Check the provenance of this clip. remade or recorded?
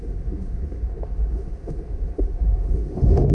remade